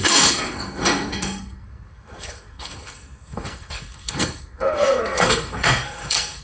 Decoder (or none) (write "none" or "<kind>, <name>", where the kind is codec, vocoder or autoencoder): codec, SNAC